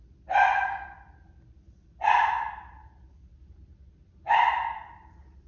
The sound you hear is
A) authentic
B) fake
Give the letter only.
A